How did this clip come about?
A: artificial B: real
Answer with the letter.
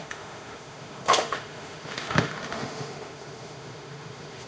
A